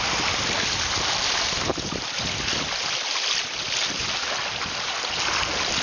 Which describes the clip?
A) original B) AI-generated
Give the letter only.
A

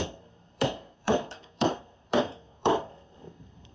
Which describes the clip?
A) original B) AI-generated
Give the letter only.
B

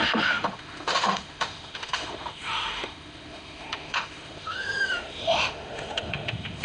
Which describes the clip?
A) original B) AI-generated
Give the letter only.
B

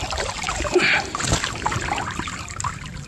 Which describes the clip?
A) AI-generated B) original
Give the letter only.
A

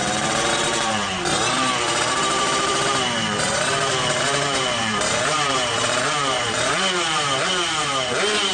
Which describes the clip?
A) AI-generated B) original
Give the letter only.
A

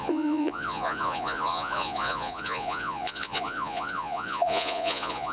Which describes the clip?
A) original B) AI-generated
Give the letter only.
B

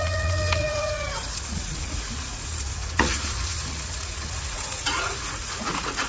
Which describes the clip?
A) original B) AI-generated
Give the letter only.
B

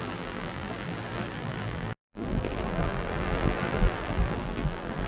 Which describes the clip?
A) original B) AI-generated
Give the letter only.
B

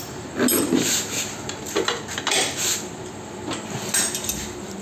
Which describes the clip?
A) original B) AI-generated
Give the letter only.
A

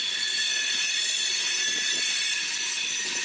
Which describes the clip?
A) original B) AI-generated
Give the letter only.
B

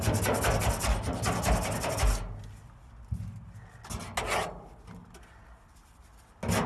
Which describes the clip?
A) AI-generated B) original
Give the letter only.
B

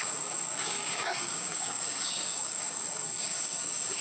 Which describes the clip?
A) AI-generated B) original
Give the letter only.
A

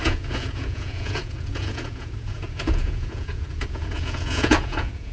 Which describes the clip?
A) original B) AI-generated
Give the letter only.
B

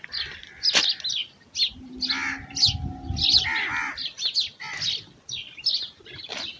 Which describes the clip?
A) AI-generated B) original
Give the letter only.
B